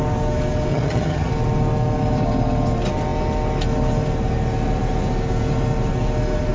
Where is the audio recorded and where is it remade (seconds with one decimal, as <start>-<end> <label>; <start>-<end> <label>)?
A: 0.0-0.7 recorded; 0.7-1.3 remade; 1.3-6.5 recorded